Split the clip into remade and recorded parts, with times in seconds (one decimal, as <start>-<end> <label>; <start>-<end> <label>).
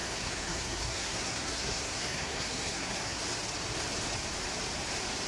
0.0-3.2 remade; 3.2-5.3 recorded